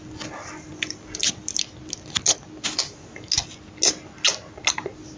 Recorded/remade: recorded